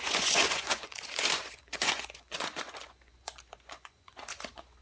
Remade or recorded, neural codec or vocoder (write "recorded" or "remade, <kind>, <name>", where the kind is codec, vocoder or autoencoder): remade, vocoder, Vocos